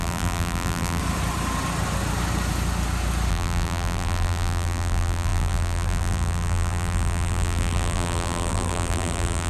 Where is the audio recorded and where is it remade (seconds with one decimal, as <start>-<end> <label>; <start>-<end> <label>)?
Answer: 0.0-1.0 remade; 1.0-3.3 recorded; 3.3-9.5 remade

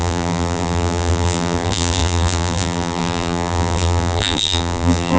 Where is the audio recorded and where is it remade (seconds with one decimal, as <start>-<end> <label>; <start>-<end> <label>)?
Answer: 0.0-5.2 remade

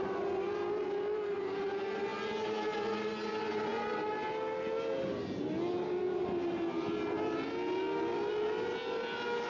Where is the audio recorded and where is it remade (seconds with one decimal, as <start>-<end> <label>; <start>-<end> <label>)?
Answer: 0.0-9.5 recorded

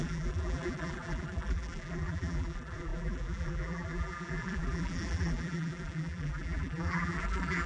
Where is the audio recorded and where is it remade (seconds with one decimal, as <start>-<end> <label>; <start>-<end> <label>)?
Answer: 0.0-7.7 remade

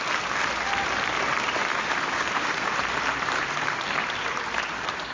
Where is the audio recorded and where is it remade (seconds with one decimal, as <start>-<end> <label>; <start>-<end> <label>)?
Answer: 0.0-1.7 recorded; 1.7-5.1 remade

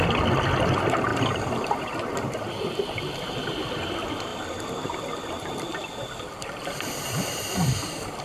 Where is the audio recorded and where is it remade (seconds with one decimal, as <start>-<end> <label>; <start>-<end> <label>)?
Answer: 0.0-1.1 recorded; 1.1-3.7 remade; 3.7-8.2 recorded

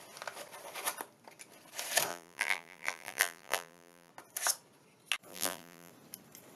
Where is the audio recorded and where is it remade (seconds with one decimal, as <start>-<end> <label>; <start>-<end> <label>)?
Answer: 0.0-2.1 recorded; 2.1-4.1 remade; 4.1-5.3 recorded; 5.3-5.9 remade; 5.9-6.6 recorded